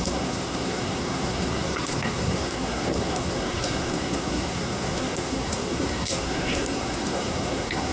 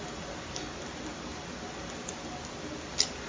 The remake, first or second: first